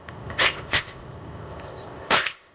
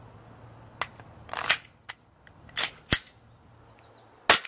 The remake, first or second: first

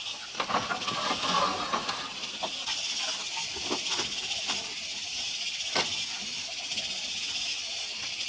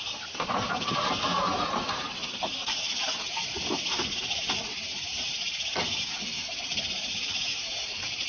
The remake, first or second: second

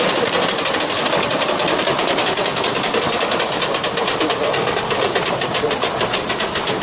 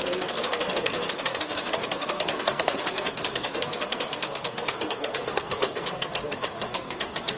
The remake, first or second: second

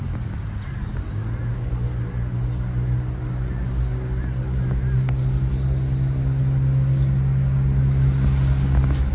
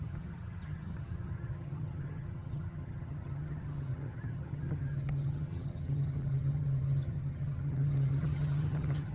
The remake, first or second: second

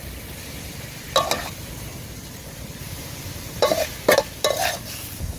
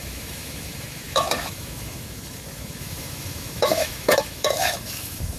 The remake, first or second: second